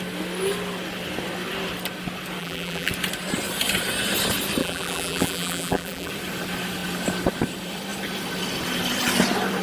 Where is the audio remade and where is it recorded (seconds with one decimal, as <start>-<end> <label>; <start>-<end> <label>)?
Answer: 0.0-2.4 recorded; 2.4-2.9 remade; 2.9-4.6 recorded; 4.6-6.1 remade; 6.1-9.6 recorded